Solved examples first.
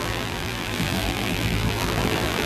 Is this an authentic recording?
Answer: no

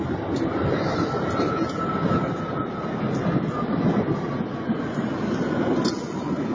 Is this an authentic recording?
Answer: yes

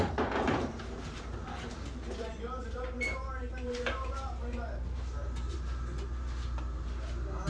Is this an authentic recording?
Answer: no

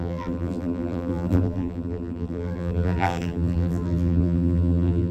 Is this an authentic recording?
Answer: no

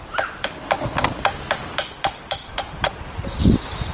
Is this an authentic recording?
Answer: yes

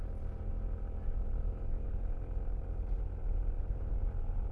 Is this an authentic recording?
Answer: yes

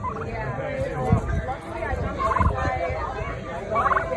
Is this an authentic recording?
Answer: yes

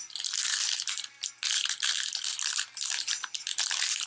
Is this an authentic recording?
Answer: yes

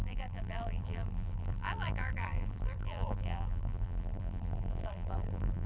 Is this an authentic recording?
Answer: no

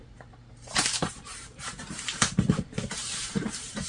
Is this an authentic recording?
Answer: no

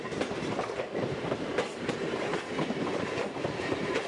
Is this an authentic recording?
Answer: no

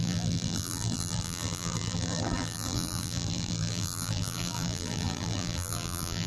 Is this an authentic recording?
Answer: no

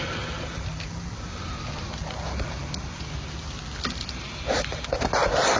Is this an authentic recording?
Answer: yes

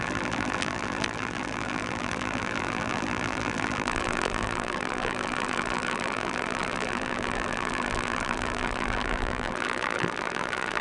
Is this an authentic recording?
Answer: no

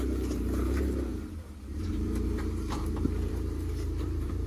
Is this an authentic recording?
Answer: no